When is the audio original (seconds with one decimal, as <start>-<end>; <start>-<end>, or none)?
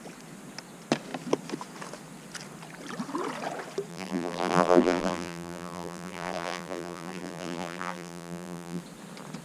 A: 0.0-3.9; 8.8-9.4